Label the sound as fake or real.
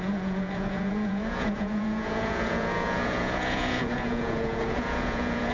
fake